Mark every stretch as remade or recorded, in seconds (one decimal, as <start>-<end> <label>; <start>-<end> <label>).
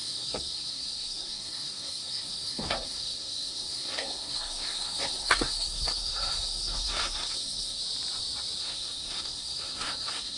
0.0-7.8 remade; 7.8-8.6 recorded; 8.6-10.4 remade